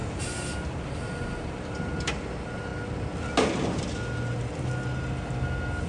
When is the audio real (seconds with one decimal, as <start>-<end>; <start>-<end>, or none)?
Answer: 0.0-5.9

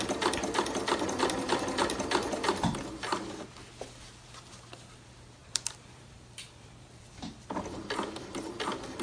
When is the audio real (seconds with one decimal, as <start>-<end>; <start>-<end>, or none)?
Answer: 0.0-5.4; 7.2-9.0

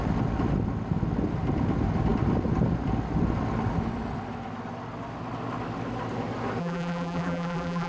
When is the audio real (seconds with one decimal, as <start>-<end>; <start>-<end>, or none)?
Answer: 0.0-6.6

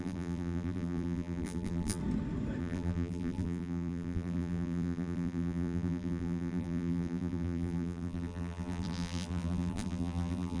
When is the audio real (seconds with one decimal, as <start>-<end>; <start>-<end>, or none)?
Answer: 2.0-2.6

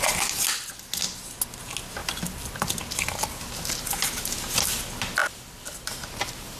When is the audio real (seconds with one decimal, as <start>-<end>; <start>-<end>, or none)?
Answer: 0.0-2.0; 2.7-5.2; 5.9-6.6

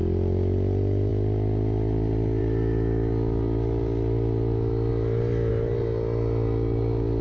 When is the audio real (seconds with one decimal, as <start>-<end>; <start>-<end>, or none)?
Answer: 0.0-4.9; 5.5-7.2

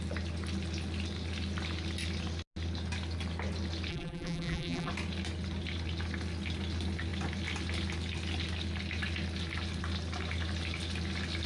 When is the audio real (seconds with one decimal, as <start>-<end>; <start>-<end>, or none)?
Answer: 0.0-3.9; 4.9-11.5